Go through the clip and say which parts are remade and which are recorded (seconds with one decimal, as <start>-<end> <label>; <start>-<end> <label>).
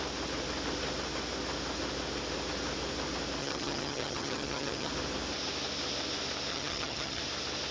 0.0-3.4 recorded; 3.4-4.9 remade; 4.9-6.5 recorded; 6.5-7.2 remade; 7.2-7.7 recorded